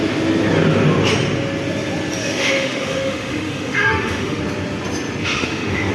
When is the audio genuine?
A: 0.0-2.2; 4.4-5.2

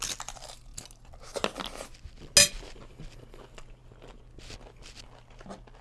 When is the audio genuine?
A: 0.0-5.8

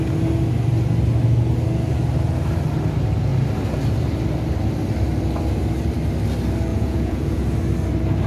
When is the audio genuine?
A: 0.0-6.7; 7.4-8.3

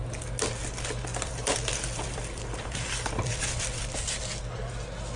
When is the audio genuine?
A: 0.0-1.1; 4.2-5.2

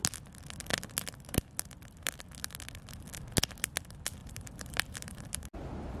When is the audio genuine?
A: 0.0-4.2

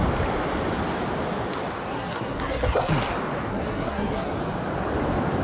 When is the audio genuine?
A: 0.0-1.9; 2.9-3.5; 4.3-5.4

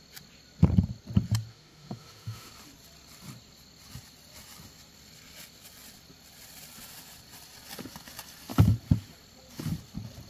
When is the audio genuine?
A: 0.0-1.5; 2.5-10.3